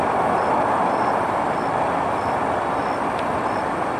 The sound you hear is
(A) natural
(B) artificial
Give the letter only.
A